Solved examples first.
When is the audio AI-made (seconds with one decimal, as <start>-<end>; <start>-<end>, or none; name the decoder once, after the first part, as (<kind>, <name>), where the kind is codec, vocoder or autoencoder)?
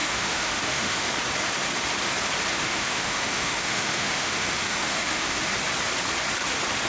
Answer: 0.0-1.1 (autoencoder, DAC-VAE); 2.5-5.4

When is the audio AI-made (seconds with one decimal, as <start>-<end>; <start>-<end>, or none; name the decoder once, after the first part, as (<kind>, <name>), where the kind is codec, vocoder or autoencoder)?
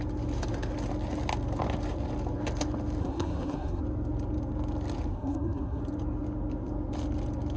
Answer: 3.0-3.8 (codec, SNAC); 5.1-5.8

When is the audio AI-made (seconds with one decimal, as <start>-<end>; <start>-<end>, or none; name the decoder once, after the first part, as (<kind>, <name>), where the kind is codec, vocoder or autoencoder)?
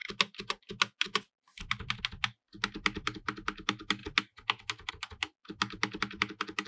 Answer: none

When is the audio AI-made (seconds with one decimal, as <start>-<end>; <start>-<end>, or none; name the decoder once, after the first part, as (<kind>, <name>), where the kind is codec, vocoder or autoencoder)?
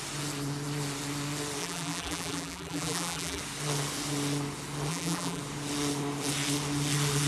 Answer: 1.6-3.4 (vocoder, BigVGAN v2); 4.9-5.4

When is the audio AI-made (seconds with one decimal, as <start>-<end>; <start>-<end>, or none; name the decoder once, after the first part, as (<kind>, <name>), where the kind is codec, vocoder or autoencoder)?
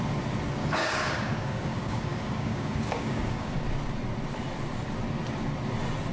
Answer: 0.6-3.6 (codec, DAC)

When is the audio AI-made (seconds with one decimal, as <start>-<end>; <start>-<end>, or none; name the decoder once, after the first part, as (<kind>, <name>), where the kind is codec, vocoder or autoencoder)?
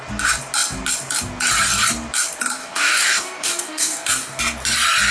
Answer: 2.6-4.4 (codec, DAC)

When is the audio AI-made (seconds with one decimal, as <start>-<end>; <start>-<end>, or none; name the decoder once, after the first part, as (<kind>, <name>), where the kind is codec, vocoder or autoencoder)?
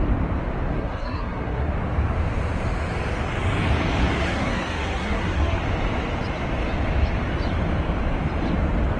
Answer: 0.7-1.7 (codec, SNAC); 4.0-5.6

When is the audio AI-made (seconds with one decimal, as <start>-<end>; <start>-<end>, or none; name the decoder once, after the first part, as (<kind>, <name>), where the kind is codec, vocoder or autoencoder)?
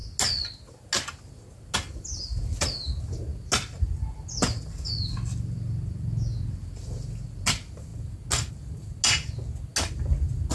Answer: none